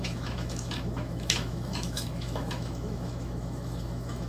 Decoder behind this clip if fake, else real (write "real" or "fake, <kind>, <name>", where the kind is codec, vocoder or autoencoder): fake, autoencoder, DAC-VAE